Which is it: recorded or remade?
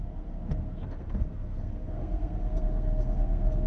remade